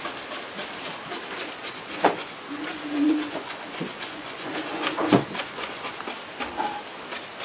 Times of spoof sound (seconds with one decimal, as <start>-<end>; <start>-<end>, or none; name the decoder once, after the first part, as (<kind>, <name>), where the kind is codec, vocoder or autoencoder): 1.6-6.0 (vocoder, Vocos)